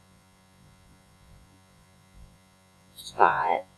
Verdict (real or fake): fake